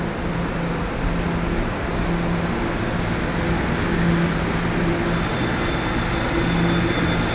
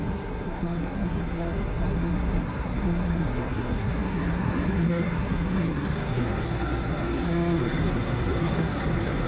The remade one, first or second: second